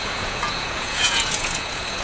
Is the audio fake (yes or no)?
yes